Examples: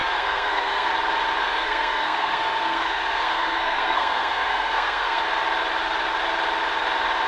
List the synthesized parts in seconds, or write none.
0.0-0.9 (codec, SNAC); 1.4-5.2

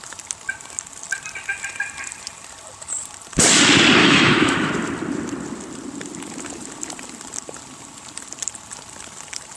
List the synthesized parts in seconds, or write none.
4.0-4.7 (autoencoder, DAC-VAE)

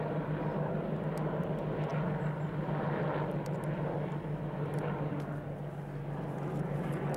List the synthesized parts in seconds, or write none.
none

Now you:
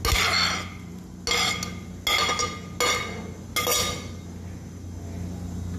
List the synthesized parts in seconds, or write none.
none

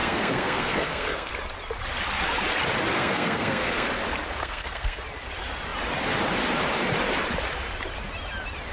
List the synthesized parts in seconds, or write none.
0.0-1.3 (codec, SNAC); 2.9-3.9; 4.4-5.0